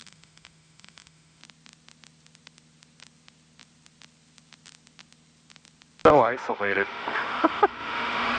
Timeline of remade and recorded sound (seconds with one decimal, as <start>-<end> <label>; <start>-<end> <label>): 0.0-1.4 remade; 1.4-6.1 recorded; 6.1-8.4 remade